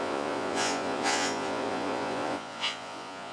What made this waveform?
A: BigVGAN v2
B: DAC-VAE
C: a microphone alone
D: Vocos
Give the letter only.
D